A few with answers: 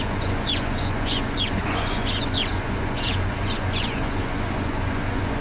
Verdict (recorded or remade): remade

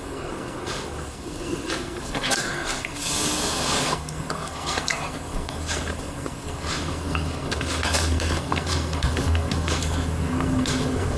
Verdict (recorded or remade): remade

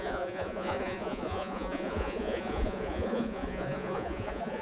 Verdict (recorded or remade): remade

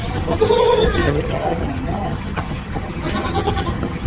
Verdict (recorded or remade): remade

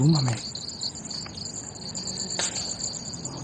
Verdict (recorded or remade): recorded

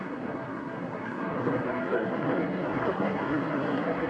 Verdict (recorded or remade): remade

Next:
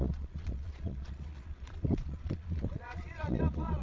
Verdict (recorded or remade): remade